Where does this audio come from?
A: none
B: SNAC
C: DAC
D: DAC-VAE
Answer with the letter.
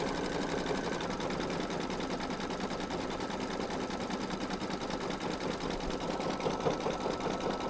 A